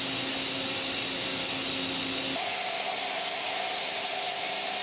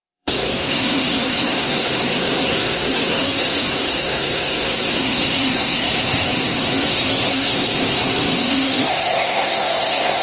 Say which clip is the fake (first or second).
second